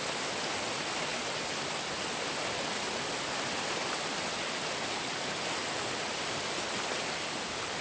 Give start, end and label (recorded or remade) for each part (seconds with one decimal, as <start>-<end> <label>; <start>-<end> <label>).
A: 0.0-7.8 recorded